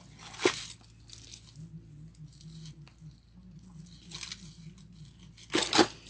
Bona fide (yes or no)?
yes